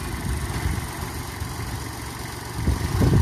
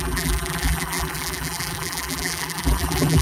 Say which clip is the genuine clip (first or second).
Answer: first